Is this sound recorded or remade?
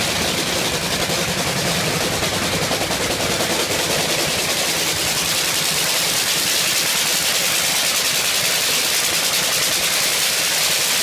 recorded